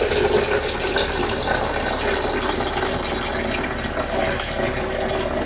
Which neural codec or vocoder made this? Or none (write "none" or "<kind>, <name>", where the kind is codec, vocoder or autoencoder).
none